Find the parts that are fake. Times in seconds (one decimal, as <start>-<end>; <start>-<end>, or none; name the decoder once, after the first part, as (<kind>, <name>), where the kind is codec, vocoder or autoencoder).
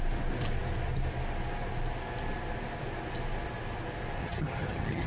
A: 4.2-5.1 (vocoder, HiFi-GAN)